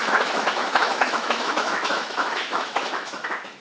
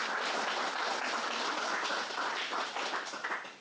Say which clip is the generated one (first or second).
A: first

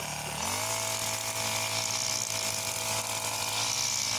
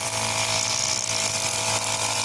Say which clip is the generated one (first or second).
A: second